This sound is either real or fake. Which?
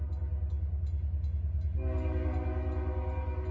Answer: real